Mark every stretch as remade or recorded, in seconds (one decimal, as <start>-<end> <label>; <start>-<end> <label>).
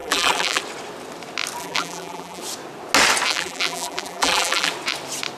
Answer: 0.0-0.6 remade; 0.6-1.6 recorded; 1.6-2.4 remade; 2.4-3.3 recorded; 3.3-4.7 remade; 4.7-5.4 recorded